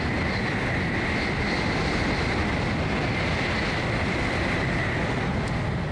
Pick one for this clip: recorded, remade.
recorded